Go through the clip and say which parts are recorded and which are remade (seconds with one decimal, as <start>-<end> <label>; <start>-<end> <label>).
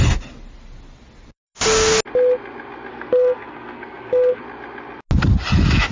0.0-2.9 recorded; 2.9-4.4 remade; 4.4-5.9 recorded